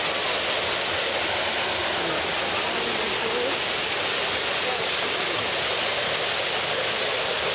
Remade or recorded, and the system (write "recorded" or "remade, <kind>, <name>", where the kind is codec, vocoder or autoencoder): recorded